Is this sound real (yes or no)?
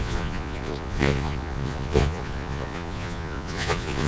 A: no